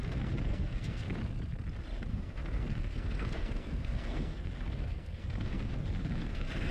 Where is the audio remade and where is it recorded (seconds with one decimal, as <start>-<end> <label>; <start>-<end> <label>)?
0.0-1.2 remade; 1.2-2.1 recorded; 2.1-6.7 remade